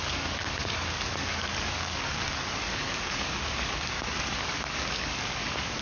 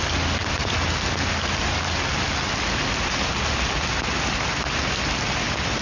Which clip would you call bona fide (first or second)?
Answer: second